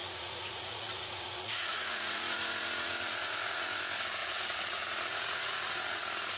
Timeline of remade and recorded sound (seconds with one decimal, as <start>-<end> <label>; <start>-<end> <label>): 0.0-3.8 remade; 3.8-4.2 recorded; 4.2-6.0 remade; 6.0-6.4 recorded